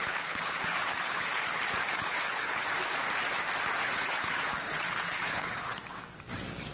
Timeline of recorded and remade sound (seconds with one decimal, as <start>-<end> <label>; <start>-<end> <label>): 0.0-2.7 remade; 2.7-3.7 recorded; 3.7-5.8 remade; 5.8-6.7 recorded